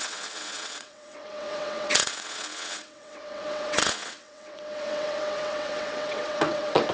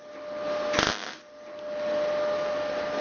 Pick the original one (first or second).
second